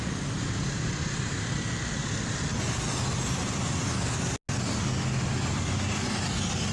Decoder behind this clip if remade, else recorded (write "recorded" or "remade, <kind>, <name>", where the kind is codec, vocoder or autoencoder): recorded